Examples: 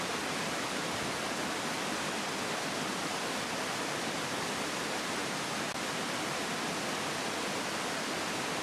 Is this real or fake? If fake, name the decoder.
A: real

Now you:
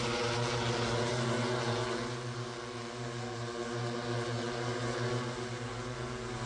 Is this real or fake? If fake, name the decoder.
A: real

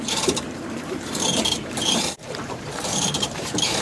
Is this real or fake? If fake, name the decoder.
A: fake, vocoder, BigVGAN v2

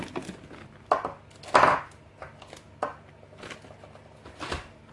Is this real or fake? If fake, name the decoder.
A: real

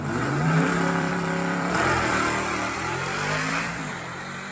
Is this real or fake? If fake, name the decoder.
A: fake, vocoder, BigVGAN v2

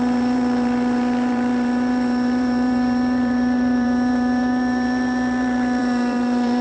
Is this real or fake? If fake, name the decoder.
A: fake, vocoder, BigVGAN v2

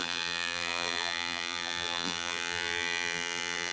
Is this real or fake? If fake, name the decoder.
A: fake, vocoder, BigVGAN v2